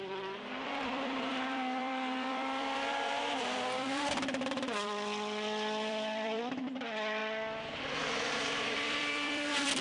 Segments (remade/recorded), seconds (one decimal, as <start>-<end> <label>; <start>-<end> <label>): 0.0-7.2 remade; 7.2-7.8 recorded; 7.8-9.8 remade